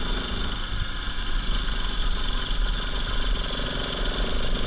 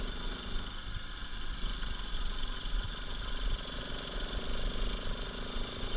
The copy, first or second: second